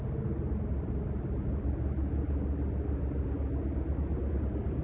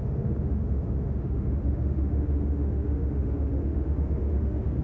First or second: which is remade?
second